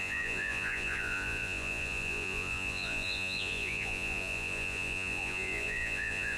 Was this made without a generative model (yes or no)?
no